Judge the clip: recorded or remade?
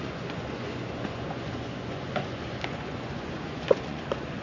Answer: remade